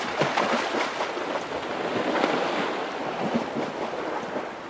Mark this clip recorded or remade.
recorded